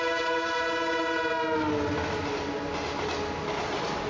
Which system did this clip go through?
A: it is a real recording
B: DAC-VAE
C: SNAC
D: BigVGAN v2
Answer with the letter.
A